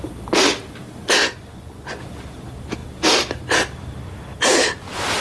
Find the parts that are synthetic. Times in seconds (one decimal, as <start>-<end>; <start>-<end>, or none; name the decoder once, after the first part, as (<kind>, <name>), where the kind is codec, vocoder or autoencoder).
1.2-2.0 (vocoder, Vocos)